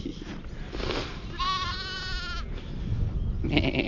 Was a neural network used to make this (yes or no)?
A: no